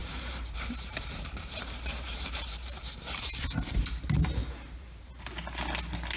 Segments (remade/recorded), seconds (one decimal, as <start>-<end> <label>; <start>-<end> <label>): 0.0-3.7 remade; 3.7-4.4 recorded; 4.4-5.1 remade; 5.1-6.2 recorded

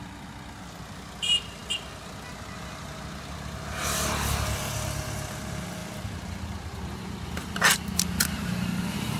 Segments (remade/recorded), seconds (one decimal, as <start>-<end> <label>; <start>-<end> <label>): 0.0-5.8 recorded; 5.8-7.6 remade; 7.6-9.2 recorded

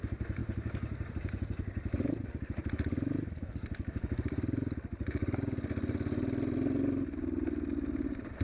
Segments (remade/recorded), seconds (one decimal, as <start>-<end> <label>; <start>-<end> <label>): 0.0-5.2 remade; 5.2-7.7 recorded; 7.7-8.4 remade

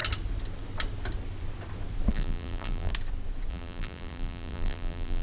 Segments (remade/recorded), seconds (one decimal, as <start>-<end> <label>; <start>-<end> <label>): 0.0-2.1 recorded; 2.1-2.9 remade; 2.9-3.5 recorded; 3.5-5.2 remade

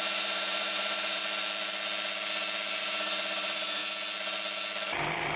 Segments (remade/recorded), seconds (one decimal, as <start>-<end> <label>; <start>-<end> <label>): 0.0-1.2 remade; 1.2-2.8 recorded; 2.8-3.8 remade; 3.8-5.4 recorded

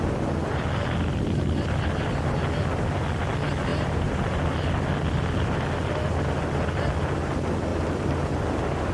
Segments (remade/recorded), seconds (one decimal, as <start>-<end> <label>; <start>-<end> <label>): 0.0-3.7 recorded; 3.7-4.2 remade; 4.2-7.7 recorded; 7.7-8.3 remade; 8.3-8.9 recorded

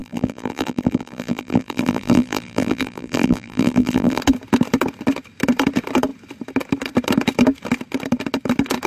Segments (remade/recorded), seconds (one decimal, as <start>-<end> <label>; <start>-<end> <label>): 0.0-4.2 remade; 4.2-8.9 recorded